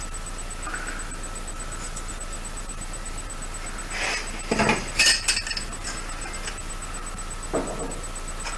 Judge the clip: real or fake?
real